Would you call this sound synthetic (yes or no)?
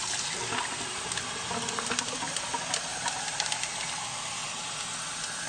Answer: no